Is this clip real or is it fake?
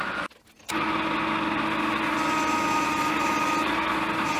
real